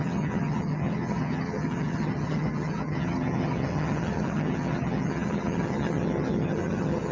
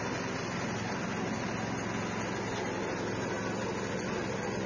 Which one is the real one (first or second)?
second